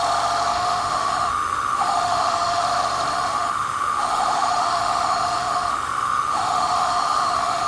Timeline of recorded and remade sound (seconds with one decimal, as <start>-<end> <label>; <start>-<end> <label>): 0.0-0.5 recorded; 0.5-2.6 remade; 2.6-3.1 recorded; 3.1-7.7 remade